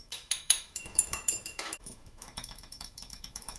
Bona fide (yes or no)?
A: no